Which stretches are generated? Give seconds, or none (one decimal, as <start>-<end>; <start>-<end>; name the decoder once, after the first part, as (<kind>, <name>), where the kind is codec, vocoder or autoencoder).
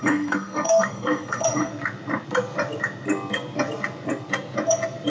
0.0-1.7 (codec, SNAC)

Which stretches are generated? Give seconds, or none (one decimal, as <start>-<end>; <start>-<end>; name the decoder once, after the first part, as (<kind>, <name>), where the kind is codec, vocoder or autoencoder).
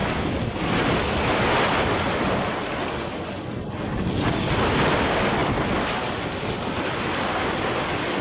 none